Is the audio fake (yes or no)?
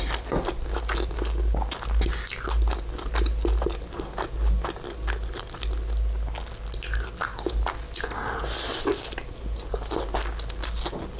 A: no